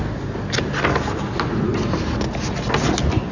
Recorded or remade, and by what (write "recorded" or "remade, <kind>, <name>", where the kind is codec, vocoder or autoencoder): recorded